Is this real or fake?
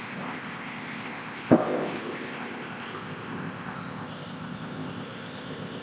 fake